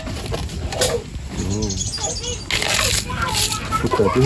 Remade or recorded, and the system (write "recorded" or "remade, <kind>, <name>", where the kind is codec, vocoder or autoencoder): recorded